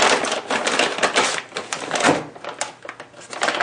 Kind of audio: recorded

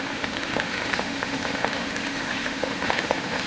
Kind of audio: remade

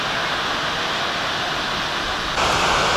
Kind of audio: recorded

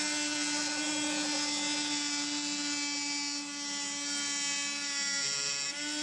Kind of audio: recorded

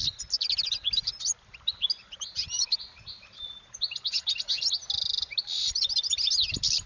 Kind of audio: recorded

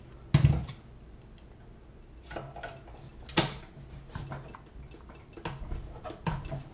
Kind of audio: recorded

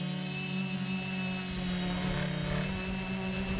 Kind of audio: recorded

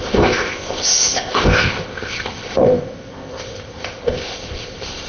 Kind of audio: remade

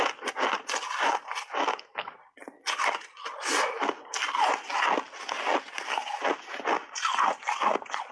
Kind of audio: recorded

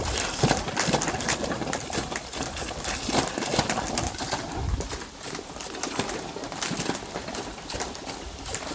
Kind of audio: recorded